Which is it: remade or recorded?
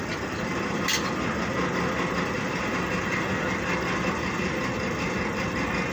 recorded